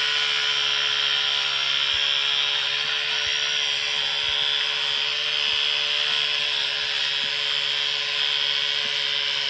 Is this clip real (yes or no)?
yes